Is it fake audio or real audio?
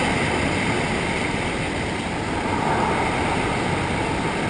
real